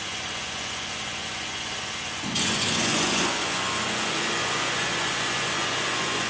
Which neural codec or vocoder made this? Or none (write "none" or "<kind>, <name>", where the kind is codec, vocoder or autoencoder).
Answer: vocoder, Vocos